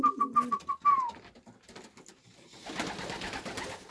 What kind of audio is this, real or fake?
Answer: real